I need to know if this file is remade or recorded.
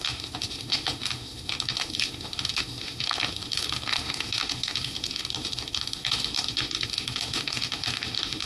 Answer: remade